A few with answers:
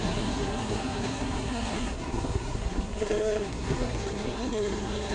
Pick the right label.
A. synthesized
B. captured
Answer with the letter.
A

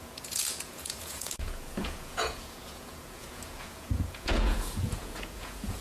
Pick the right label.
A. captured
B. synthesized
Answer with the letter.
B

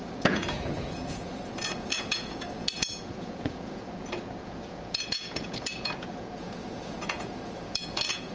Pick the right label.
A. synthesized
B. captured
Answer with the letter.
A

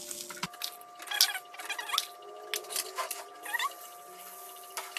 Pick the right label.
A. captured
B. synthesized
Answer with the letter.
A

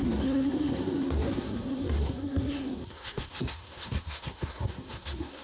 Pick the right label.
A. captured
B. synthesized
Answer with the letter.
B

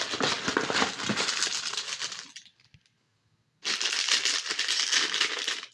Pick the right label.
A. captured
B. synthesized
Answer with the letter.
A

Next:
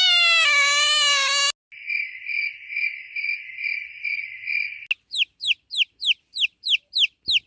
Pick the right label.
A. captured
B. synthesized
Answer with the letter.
A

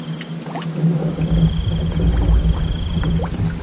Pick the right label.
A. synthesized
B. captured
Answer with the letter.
B